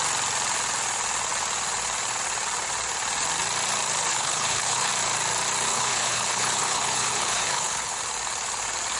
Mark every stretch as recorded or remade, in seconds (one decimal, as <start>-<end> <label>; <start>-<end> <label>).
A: 0.0-4.1 recorded; 4.1-4.9 remade; 4.9-5.7 recorded; 5.7-8.0 remade; 8.0-9.0 recorded